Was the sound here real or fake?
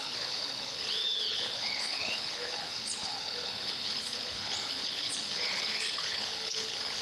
fake